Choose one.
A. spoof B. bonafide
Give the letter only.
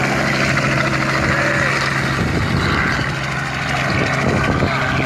B